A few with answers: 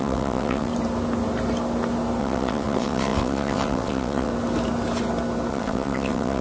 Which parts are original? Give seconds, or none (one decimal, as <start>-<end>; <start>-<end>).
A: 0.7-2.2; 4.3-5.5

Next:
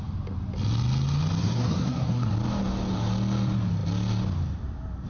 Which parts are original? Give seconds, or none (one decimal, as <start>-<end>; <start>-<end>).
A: 0.0-1.4; 2.3-5.1

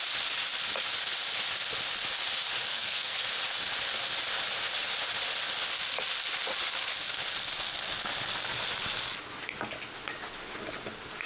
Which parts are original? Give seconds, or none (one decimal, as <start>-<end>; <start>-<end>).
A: 0.0-2.7; 3.2-11.3

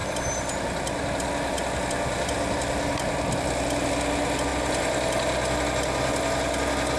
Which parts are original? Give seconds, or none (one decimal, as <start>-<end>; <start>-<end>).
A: 0.0-7.0

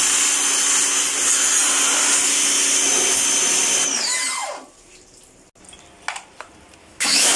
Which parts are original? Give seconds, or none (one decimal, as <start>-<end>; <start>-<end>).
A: 0.0-6.8

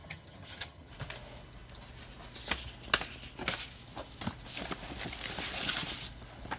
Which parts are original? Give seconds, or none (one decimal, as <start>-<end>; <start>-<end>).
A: 0.9-6.6

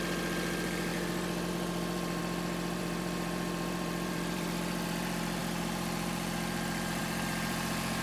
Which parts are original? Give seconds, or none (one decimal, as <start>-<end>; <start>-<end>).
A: 2.2-2.8

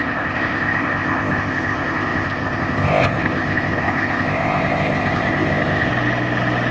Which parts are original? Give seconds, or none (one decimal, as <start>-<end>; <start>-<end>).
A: 5.9-6.7